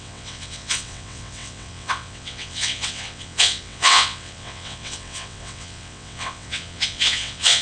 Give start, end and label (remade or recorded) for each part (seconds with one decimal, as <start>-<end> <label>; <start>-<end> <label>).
0.0-7.6 remade